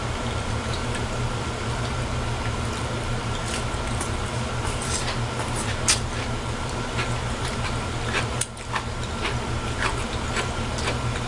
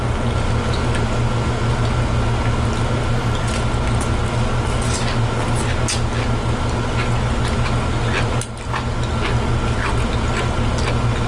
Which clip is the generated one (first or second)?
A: first